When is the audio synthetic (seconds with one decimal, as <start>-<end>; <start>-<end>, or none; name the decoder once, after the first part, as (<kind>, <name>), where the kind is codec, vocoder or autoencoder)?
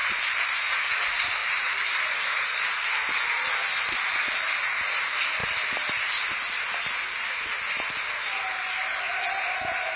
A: 0.0-0.8 (vocoder, BigVGAN v2); 1.4-2.7